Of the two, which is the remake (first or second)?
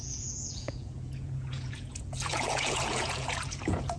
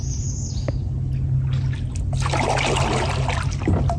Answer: first